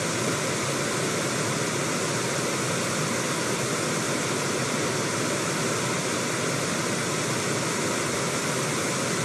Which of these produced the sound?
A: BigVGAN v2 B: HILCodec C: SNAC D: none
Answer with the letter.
D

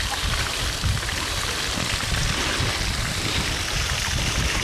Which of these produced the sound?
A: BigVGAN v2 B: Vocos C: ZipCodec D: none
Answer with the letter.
A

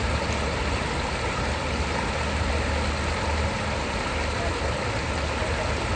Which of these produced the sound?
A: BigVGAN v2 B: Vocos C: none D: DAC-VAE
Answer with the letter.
C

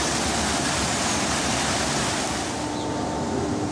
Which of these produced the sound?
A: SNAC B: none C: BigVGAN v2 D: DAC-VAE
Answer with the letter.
B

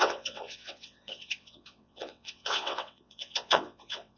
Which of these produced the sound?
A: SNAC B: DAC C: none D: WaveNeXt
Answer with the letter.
D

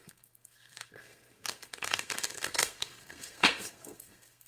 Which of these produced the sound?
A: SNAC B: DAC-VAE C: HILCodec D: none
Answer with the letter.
A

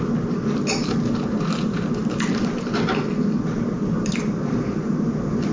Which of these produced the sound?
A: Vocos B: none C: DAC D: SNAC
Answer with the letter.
B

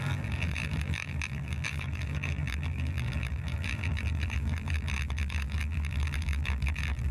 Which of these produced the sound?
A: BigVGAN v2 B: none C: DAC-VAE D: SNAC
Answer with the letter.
A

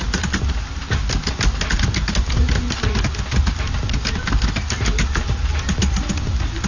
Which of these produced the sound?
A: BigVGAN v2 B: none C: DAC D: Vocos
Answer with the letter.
B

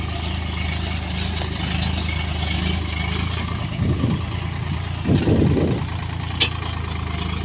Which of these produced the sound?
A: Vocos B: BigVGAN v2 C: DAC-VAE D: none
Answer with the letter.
D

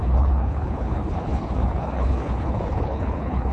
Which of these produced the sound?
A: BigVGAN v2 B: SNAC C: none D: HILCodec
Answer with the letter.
D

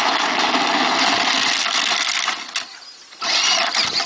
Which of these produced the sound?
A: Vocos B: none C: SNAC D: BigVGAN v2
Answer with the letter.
B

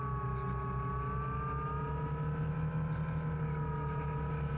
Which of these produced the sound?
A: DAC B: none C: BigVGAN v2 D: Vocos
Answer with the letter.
B